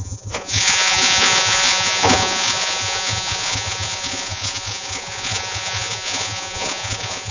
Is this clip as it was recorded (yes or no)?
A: no